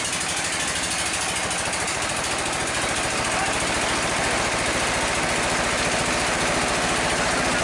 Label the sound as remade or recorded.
recorded